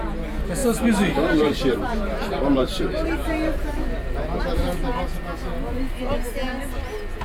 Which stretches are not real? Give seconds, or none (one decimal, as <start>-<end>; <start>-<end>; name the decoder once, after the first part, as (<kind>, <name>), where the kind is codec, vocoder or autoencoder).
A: 0.6-4.4 (vocoder, BigVGAN v2)